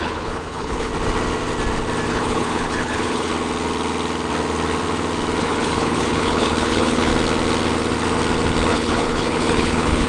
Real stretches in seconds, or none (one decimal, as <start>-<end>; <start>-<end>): 0.9-2.1; 3.3-5.4; 7.1-8.7